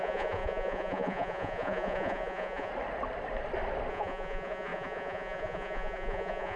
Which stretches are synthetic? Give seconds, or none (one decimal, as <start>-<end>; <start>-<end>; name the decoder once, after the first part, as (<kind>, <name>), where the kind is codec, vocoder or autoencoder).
0.0-2.7 (vocoder, Vocos); 3.9-6.6